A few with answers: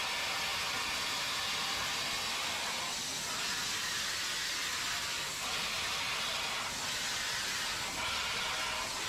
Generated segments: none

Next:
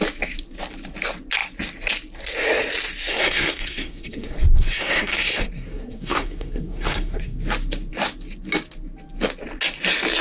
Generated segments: 3.1-7.4 (codec, SNAC)

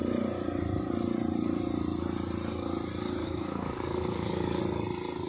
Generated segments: 3.2-4.6 (codec, DAC)

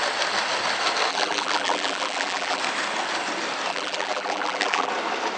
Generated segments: 1.1-2.6 (vocoder, BigVGAN v2); 3.7-4.9

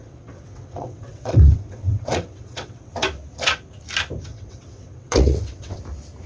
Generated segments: 0.0-2.9 (vocoder, WaveNeXt); 4.3-5.8

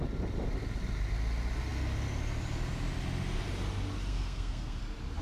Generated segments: 4.1-4.8 (codec, SNAC)

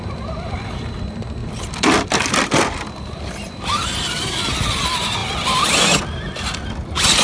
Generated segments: 1.4-4.5 (vocoder, BigVGAN v2); 5.2-6.0